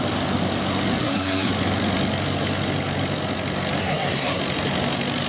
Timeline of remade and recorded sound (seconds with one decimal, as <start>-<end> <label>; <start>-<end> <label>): 0.0-1.0 recorded; 1.0-1.5 remade; 1.5-3.8 recorded; 3.8-4.4 remade; 4.4-5.3 recorded